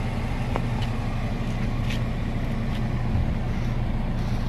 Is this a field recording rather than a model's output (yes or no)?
yes